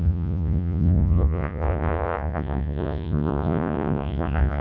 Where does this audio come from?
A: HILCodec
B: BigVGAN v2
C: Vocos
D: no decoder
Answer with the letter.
C